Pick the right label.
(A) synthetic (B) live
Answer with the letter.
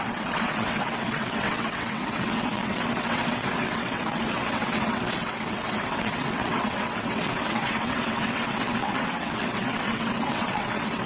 A